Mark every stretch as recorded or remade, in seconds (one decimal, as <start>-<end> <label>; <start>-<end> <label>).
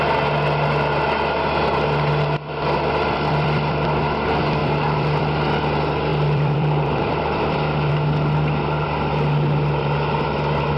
0.0-4.6 recorded; 4.6-5.2 remade; 5.2-6.1 recorded; 6.1-7.9 remade; 7.9-10.8 recorded